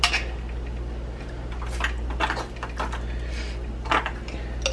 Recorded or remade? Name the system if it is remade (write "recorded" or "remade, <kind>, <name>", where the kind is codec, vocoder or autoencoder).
recorded